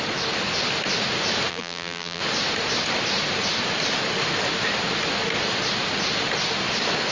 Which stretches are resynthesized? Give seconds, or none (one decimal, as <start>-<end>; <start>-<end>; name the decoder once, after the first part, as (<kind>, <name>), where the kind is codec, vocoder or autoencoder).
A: 1.5-2.2 (vocoder, BigVGAN v2)